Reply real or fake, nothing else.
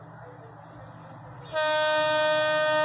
real